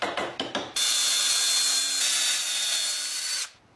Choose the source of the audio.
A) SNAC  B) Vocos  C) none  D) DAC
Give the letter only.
C